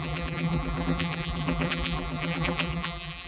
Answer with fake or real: fake